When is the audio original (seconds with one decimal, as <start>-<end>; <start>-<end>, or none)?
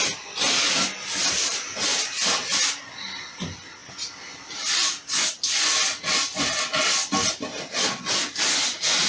0.0-1.2; 2.8-9.1